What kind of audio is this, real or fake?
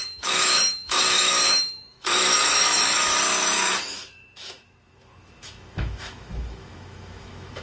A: fake